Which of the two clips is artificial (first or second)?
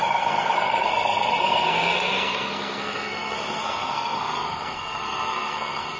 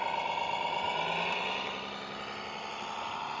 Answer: first